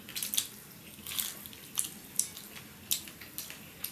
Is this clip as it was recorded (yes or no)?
yes